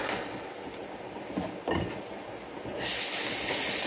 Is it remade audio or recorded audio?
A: recorded